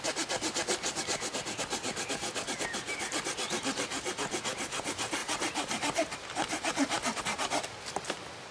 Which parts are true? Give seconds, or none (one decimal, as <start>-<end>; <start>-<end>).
0.0-8.5